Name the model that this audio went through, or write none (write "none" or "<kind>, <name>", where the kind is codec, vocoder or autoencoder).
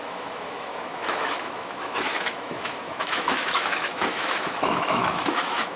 autoencoder, DAC-VAE